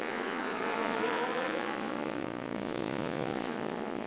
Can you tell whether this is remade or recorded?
remade